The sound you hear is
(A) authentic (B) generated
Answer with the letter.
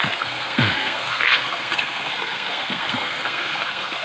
B